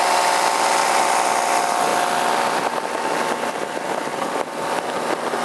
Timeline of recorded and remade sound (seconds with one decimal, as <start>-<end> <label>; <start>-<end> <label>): 0.0-4.1 recorded; 4.1-4.9 remade; 4.9-5.4 recorded